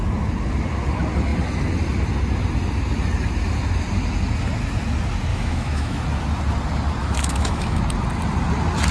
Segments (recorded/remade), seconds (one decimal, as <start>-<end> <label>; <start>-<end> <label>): 0.0-5.3 recorded; 5.3-6.0 remade; 6.0-7.0 recorded; 7.0-7.8 remade; 7.8-8.9 recorded